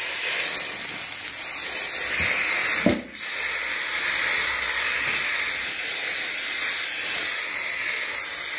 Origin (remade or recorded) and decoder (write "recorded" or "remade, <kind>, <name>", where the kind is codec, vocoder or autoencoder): recorded